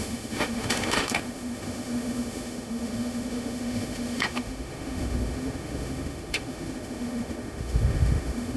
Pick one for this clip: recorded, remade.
remade